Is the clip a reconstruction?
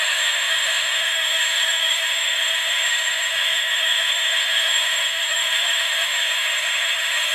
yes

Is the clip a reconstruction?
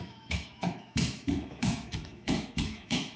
yes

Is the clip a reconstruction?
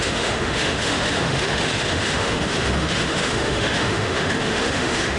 yes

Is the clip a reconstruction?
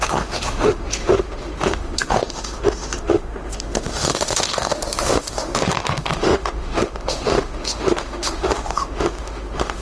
yes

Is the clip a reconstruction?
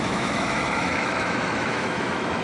yes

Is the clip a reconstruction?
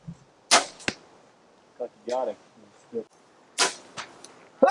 no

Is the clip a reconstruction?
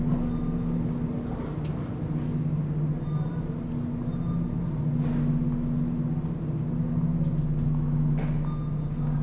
no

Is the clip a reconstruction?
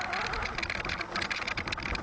no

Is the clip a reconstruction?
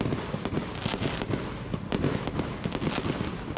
no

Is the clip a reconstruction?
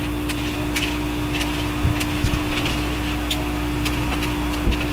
no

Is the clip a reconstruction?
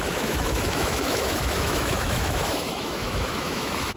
yes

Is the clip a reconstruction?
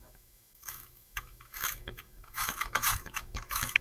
yes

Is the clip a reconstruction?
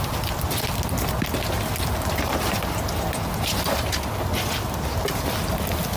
no